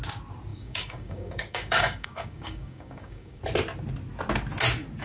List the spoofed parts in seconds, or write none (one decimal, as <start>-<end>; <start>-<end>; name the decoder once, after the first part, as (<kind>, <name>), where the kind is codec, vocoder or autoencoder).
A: 0.5-3.4 (codec, DAC)